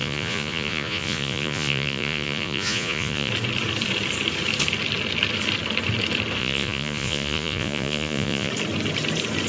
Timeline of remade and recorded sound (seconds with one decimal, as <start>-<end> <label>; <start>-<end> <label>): 0.0-3.3 remade; 3.3-6.4 recorded; 6.4-8.5 remade; 8.5-9.5 recorded